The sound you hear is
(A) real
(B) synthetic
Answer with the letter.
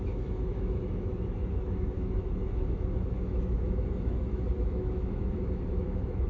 B